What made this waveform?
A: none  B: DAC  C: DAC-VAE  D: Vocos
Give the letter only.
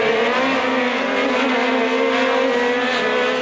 A